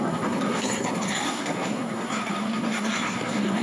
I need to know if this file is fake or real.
fake